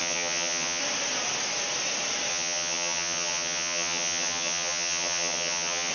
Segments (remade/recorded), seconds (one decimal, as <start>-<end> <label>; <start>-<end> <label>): 0.0-0.8 remade; 0.8-2.3 recorded; 2.3-5.9 remade